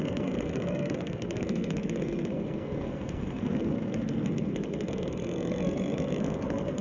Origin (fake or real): fake